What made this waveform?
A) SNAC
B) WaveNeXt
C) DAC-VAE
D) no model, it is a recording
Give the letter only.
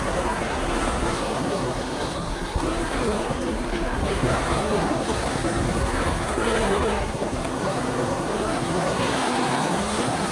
A